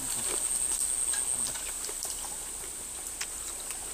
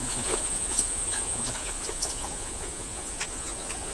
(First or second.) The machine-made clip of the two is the second